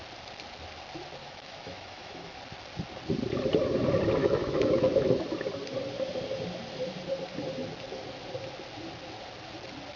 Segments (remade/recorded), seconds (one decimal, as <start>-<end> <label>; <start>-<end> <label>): 0.0-1.2 recorded; 1.2-2.4 remade; 2.4-4.2 recorded; 4.2-5.2 remade; 5.2-10.0 recorded